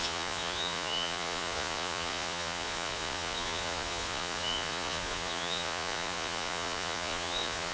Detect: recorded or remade remade